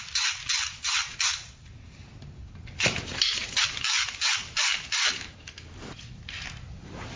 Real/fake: real